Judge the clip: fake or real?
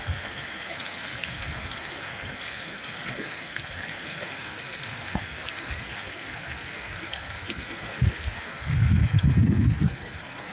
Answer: fake